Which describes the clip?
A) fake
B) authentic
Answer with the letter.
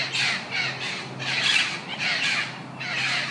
B